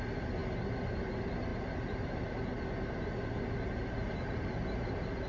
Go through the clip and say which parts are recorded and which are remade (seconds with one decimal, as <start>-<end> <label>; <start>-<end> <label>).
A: 0.0-5.3 recorded